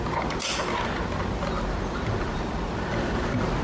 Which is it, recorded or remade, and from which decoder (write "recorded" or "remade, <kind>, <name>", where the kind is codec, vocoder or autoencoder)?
recorded